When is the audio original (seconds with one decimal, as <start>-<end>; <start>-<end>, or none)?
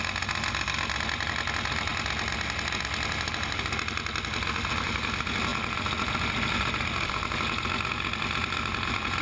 0.0-9.2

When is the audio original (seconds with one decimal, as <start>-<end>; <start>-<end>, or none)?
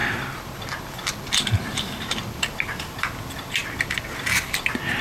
0.0-5.0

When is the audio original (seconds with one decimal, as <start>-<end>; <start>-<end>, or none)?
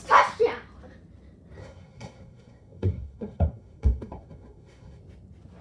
0.0-1.6; 5.0-5.6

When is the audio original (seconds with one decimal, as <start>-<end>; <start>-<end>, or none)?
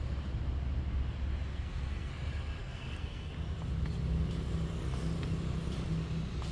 0.0-1.5; 2.1-2.6; 3.3-6.5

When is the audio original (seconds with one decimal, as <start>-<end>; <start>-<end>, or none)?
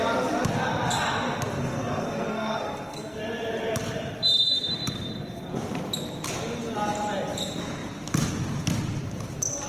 0.0-1.6; 3.2-9.7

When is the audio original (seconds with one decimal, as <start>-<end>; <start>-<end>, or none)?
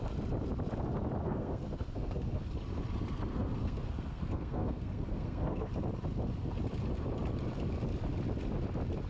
0.0-1.2; 2.4-3.3; 5.7-9.1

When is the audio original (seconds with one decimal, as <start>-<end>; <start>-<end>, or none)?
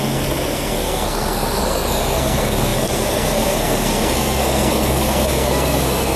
none